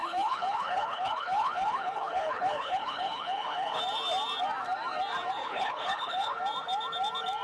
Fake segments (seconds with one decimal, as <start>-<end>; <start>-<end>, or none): 0.0-3.8; 5.4-6.4